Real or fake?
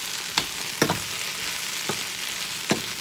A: real